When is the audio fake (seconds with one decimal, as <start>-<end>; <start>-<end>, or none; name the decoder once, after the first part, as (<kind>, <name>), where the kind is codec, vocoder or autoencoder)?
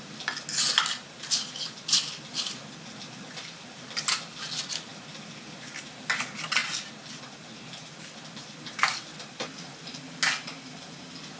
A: none